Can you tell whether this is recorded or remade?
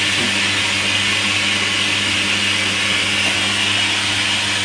recorded